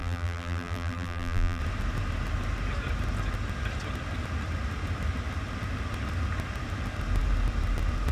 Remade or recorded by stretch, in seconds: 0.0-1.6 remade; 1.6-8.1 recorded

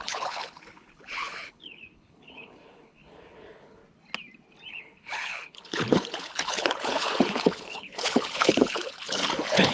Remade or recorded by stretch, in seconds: 0.0-3.8 remade; 3.8-4.7 recorded; 4.7-9.7 remade

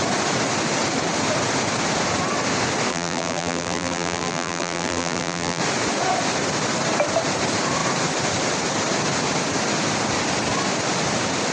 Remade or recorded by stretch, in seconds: 0.0-2.9 recorded; 2.9-5.6 remade; 5.6-11.5 recorded